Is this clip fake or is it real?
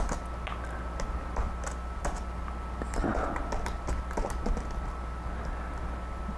real